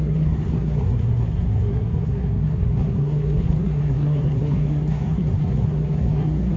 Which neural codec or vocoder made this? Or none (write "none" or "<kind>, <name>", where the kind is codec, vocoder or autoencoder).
codec, SNAC